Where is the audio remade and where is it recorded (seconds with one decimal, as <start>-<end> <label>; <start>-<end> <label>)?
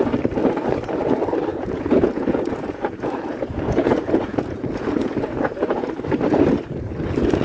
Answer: 0.0-1.5 recorded; 1.5-5.9 remade; 5.9-7.4 recorded